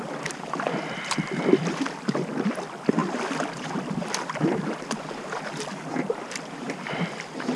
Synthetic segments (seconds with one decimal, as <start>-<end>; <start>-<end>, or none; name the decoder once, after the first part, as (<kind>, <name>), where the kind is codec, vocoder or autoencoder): 0.0-7.6 (vocoder, BigVGAN v2)